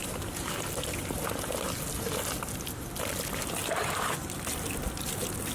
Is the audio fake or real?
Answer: real